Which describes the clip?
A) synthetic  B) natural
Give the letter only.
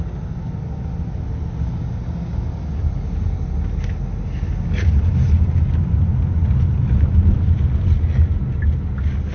B